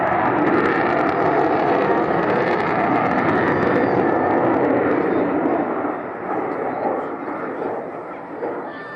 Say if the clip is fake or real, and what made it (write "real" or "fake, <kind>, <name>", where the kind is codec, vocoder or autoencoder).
real